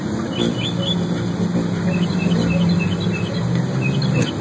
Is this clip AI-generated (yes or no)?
no